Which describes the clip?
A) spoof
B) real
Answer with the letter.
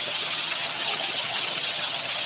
A